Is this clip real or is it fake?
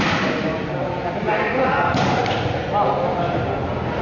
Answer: real